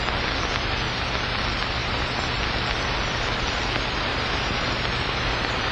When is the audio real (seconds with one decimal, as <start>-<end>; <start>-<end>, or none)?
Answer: 0.0-4.1